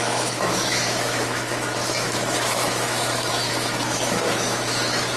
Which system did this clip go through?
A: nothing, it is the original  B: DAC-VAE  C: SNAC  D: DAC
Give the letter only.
B